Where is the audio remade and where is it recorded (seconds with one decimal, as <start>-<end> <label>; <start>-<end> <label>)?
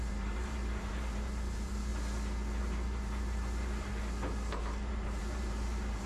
0.0-1.9 remade; 1.9-2.6 recorded; 2.6-3.9 remade; 3.9-4.5 recorded; 4.5-6.1 remade